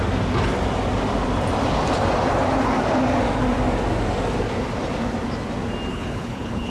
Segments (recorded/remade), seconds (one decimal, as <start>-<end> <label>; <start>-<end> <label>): 0.0-5.9 recorded; 5.9-6.7 remade